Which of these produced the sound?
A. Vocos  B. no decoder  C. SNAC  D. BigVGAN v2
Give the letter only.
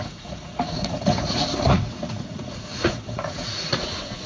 A